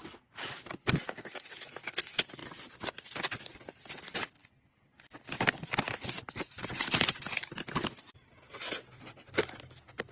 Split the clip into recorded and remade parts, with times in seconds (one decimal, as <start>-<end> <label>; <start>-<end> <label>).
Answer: 0.0-10.1 recorded